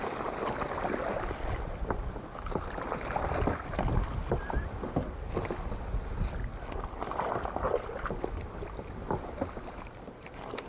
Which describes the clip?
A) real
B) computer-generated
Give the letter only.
A